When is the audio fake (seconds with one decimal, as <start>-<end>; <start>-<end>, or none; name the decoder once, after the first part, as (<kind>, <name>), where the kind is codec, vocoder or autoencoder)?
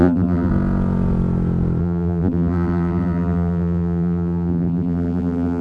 0.0-0.5 (vocoder, BigVGAN v2); 1.8-5.6